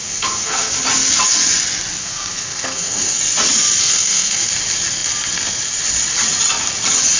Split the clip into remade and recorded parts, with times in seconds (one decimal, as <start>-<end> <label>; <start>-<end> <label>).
0.0-0.7 remade; 0.7-2.0 recorded; 2.0-3.2 remade; 3.2-3.8 recorded; 3.8-4.5 remade; 4.5-7.2 recorded